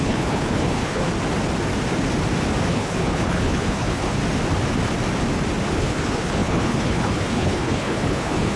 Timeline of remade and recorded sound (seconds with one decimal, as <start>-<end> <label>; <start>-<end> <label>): 0.0-1.0 remade; 1.0-2.7 recorded; 2.7-4.2 remade; 4.2-5.7 recorded; 5.7-8.6 remade

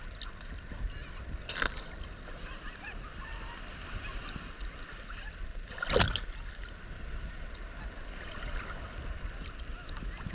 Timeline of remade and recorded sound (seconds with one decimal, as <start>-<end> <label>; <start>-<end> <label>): 0.0-10.3 recorded

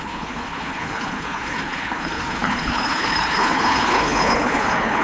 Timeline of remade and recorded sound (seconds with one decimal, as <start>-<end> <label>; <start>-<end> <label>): 0.0-5.0 remade